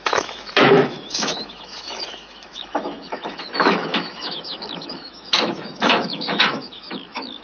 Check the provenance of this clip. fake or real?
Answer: fake